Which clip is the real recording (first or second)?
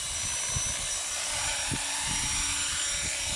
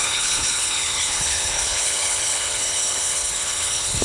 first